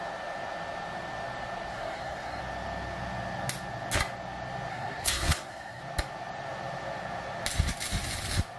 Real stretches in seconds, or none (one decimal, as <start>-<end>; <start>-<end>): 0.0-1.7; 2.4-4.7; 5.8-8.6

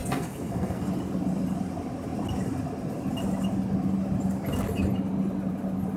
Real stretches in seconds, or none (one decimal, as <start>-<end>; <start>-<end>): 0.9-6.0

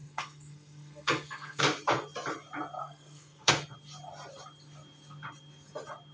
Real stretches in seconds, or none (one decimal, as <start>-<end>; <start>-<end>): 1.6-2.8; 3.5-6.1

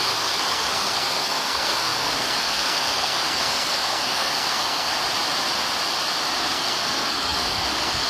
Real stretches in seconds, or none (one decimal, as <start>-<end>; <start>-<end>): 4.9-6.4

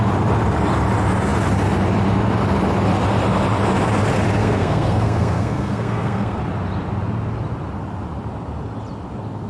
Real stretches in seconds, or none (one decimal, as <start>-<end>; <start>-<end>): 0.0-4.4; 6.4-9.5

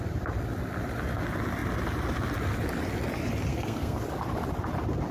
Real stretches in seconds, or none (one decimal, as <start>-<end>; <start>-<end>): 0.0-3.5; 4.0-5.1